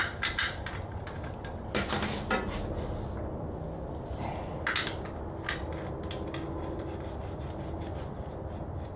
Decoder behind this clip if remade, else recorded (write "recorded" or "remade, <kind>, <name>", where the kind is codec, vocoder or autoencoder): recorded